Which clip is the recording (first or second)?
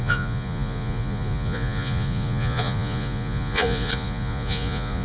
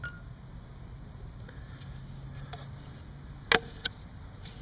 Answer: second